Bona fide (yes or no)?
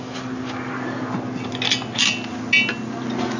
yes